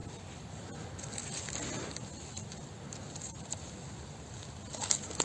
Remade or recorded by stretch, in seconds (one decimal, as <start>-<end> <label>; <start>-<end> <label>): 0.0-5.2 recorded